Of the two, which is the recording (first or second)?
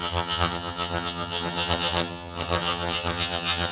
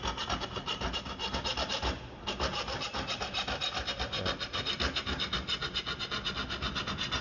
second